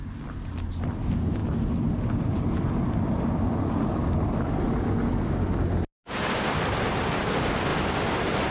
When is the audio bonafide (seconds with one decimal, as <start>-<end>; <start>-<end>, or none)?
0.0-8.5

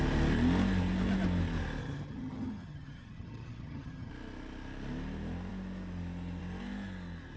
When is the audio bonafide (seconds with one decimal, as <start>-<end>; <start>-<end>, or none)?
0.0-1.8; 4.1-7.4

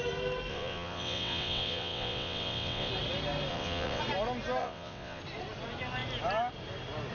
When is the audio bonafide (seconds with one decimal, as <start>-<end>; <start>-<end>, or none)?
0.0-0.5; 2.9-3.5; 4.0-4.6; 5.2-7.1

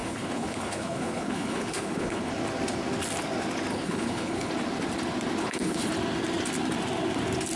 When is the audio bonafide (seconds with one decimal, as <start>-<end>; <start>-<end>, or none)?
2.3-3.7; 4.5-5.4; 5.9-7.6

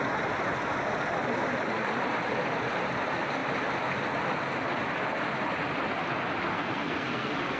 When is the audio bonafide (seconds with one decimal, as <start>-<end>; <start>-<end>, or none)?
0.0-6.5